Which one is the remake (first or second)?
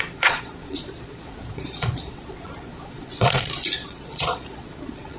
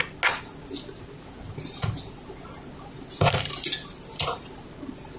first